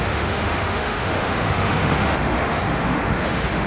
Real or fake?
fake